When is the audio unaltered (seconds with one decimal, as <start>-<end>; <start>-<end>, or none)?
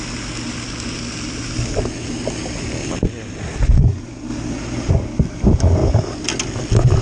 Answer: 0.0-7.0